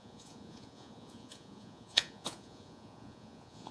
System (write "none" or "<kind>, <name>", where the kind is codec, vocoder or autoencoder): vocoder, Vocos